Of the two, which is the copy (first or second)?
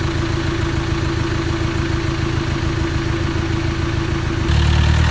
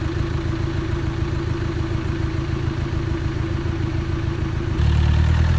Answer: second